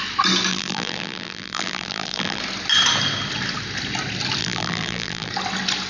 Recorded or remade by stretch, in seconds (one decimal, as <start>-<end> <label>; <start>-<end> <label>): 0.0-0.5 recorded; 0.5-2.4 remade; 2.4-4.4 recorded; 4.4-5.3 remade; 5.3-5.9 recorded